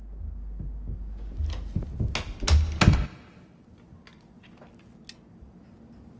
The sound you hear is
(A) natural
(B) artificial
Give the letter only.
A